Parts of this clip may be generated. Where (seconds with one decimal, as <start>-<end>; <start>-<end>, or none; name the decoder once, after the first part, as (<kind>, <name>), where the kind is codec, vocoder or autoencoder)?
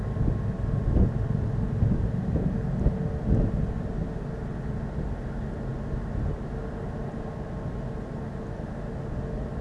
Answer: none